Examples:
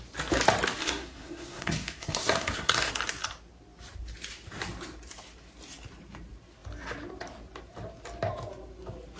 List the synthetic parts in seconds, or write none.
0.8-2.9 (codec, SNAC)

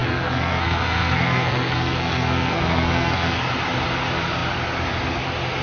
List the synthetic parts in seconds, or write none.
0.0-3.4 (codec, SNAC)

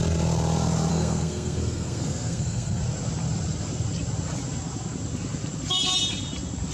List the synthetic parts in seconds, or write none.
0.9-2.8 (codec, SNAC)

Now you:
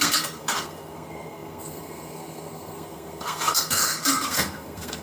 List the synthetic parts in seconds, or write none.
0.0-5.0 (codec, SNAC)

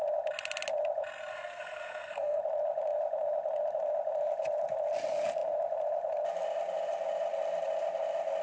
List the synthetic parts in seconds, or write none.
1.3-2.4 (codec, SNAC)

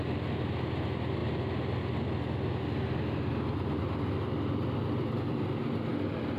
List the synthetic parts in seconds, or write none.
none

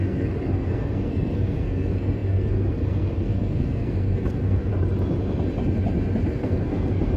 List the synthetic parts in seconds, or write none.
0.0-4.7 (codec, SNAC); 6.3-7.2